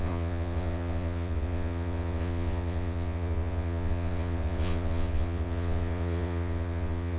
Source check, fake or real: fake